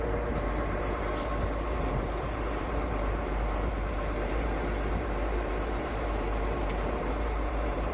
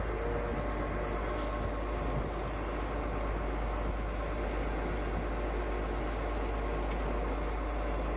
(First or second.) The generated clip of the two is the first